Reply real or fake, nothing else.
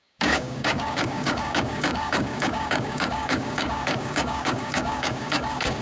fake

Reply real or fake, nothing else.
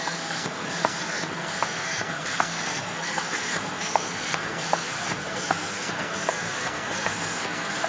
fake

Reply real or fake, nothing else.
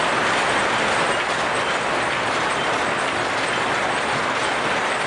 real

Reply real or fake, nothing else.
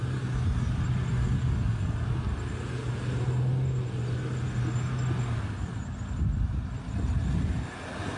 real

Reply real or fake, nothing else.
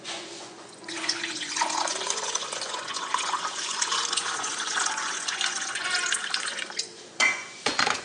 fake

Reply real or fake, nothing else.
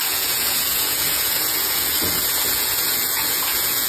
fake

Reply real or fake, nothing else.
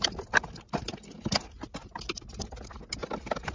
real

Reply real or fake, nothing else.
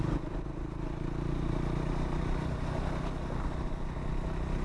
real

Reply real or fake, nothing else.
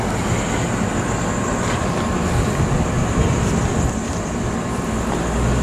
real